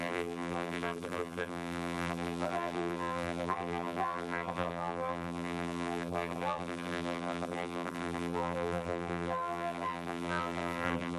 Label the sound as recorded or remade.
remade